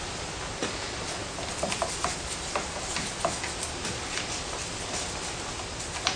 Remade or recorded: recorded